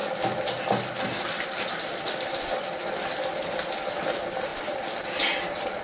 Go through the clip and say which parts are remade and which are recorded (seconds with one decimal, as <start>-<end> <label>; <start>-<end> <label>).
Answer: 0.0-3.3 remade; 3.3-4.5 recorded; 4.5-5.0 remade; 5.0-5.8 recorded